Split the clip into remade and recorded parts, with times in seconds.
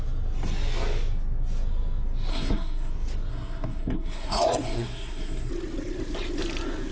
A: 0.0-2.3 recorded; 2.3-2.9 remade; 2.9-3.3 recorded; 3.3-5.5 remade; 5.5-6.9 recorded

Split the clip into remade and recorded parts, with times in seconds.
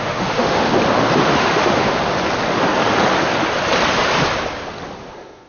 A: 0.0-0.7 remade; 0.7-1.3 recorded; 1.3-1.9 remade; 1.9-5.1 recorded; 5.1-5.5 remade